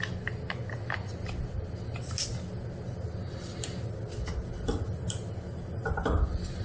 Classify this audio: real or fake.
real